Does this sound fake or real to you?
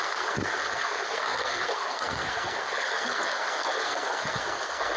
fake